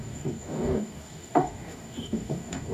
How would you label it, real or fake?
fake